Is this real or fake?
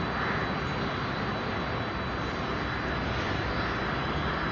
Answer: real